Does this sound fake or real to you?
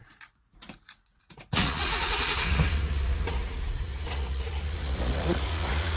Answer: fake